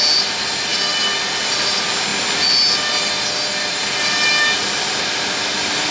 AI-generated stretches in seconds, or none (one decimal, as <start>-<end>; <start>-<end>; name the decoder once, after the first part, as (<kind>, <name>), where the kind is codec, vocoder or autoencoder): none